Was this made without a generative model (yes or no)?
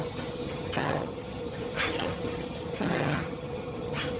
no